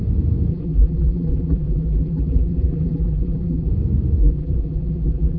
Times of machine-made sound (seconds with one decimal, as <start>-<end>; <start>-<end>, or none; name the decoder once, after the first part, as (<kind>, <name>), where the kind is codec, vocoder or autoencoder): 0.5-3.7 (vocoder, BigVGAN v2); 4.2-5.4